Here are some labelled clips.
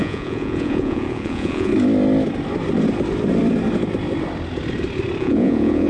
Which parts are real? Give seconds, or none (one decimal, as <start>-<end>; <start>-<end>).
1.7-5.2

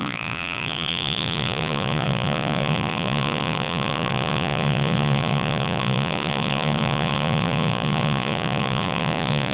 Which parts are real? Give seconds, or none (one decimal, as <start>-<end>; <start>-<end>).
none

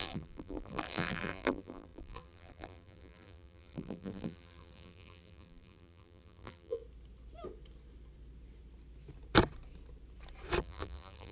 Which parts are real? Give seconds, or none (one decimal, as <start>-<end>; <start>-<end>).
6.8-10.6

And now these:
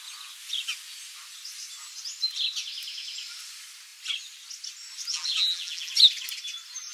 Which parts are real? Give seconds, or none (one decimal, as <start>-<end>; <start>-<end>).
0.0-5.1; 5.9-6.9

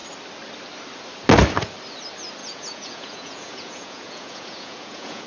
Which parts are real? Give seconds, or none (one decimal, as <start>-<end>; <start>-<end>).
0.0-2.4

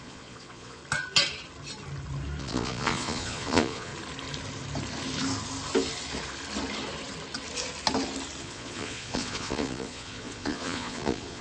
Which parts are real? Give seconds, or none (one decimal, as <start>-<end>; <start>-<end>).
0.8-2.4; 3.9-8.4